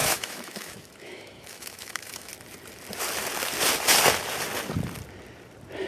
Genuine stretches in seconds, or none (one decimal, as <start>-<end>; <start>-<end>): 2.3-5.9